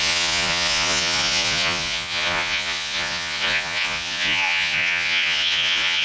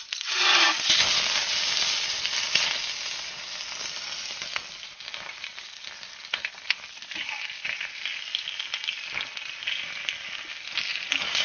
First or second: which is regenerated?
first